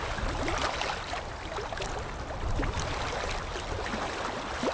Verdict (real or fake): real